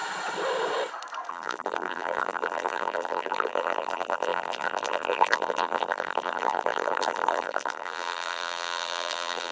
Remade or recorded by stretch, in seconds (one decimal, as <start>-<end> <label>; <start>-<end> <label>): 0.0-1.3 recorded; 1.3-9.5 remade